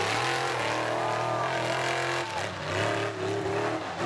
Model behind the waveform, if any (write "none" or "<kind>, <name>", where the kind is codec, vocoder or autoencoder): none